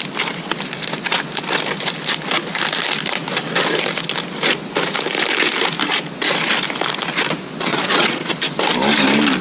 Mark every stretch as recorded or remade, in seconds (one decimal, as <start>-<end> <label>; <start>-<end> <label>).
0.0-7.7 recorded; 7.7-8.3 remade; 8.3-9.4 recorded